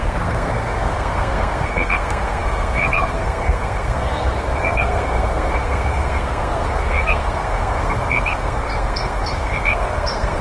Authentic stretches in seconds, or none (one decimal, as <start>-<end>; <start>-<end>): none